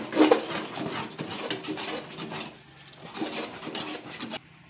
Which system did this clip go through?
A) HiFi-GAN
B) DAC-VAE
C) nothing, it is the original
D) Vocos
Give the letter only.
C